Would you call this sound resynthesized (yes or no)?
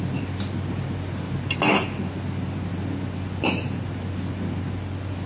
no